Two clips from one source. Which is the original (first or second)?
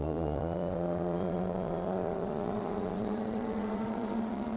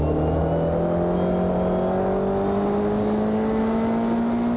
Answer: second